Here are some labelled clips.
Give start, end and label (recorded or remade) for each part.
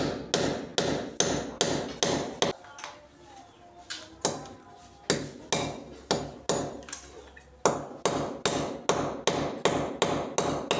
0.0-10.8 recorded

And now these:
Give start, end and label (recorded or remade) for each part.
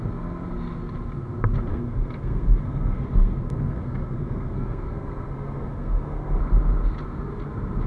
0.0-1.7 recorded; 1.7-6.4 remade; 6.4-7.9 recorded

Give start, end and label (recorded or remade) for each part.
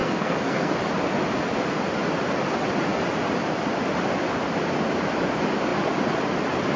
0.0-0.7 remade; 0.7-6.8 recorded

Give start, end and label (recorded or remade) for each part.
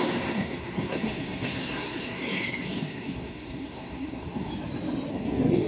0.0-4.5 remade; 4.5-5.1 recorded; 5.1-5.7 remade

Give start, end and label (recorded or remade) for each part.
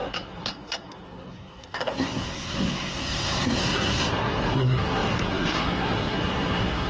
0.0-6.9 remade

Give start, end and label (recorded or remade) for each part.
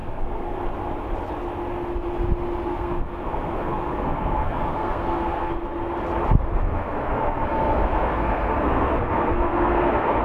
0.0-0.6 remade; 0.6-2.7 recorded; 2.7-5.5 remade; 5.5-6.6 recorded; 6.6-10.2 remade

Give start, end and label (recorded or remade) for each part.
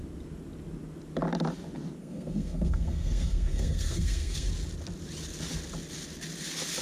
0.0-2.0 recorded; 2.0-4.5 remade; 4.5-6.8 recorded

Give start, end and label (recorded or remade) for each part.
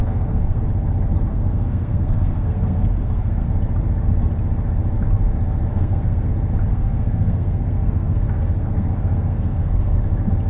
0.0-0.6 remade; 0.6-1.3 recorded; 1.3-3.5 remade; 3.5-5.7 recorded; 5.7-6.3 remade; 6.3-6.7 recorded; 6.7-10.0 remade; 10.0-10.5 recorded